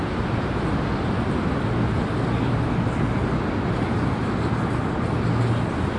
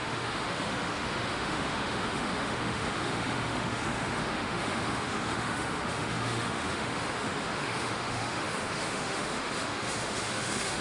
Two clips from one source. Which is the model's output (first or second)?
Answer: second